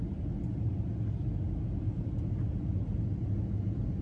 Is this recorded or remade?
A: recorded